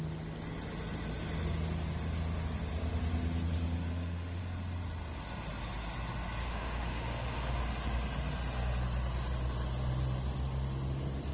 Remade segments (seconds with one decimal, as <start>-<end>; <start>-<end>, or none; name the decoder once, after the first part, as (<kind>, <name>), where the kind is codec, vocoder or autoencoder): 3.9-4.4 (autoencoder, DAC-VAE); 6.4-7.6